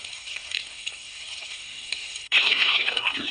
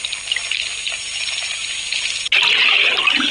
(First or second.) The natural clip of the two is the second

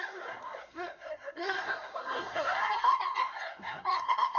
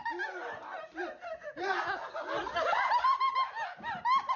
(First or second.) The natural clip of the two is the second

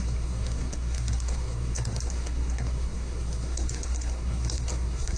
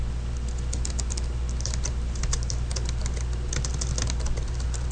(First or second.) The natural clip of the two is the second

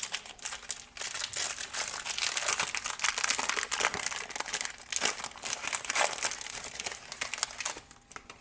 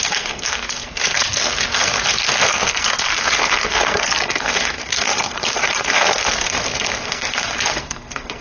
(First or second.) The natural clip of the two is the first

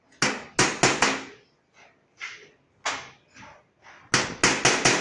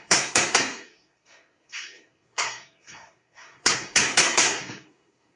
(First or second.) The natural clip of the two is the first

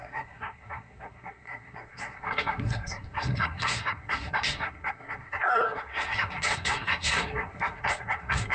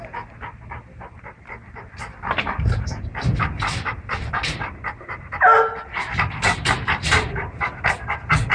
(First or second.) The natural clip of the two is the second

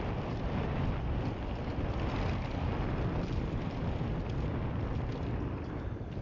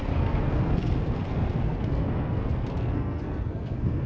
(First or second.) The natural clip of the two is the first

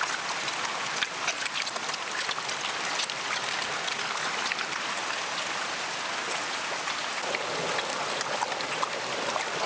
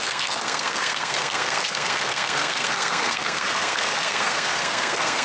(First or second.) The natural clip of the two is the first